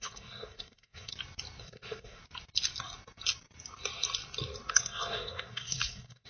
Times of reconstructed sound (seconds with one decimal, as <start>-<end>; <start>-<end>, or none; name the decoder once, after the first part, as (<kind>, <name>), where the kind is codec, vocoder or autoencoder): 0.0-1.1 (codec, SNAC); 1.6-2.2; 4.7-6.3